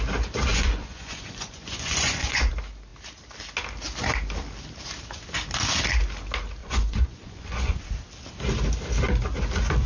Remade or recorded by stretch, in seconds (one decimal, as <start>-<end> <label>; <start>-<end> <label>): 0.0-0.5 recorded; 0.5-2.5 remade; 2.5-6.6 recorded; 6.6-7.8 remade; 7.8-9.9 recorded